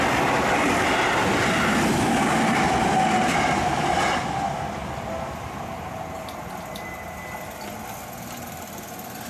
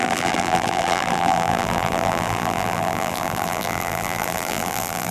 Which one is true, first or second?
first